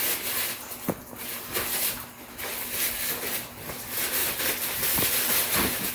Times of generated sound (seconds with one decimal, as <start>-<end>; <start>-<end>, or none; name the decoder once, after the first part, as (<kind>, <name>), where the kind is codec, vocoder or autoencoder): none